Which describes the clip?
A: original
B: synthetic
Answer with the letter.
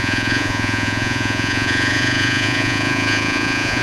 B